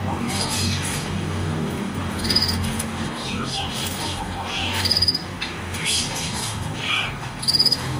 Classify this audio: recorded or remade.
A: remade